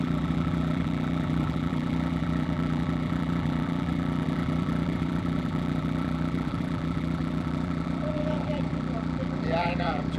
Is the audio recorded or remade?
remade